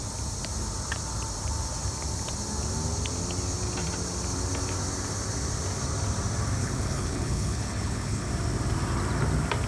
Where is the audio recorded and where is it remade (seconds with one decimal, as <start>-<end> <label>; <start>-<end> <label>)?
0.0-6.6 recorded; 6.6-8.3 remade; 8.3-9.7 recorded